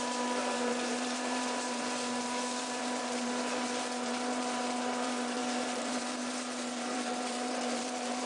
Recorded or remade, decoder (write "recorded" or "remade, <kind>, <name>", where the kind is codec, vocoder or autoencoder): remade, vocoder, BigVGAN v2